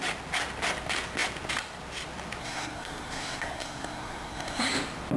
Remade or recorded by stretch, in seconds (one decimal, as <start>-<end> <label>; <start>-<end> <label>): 0.0-2.4 recorded; 2.4-4.7 remade; 4.7-5.2 recorded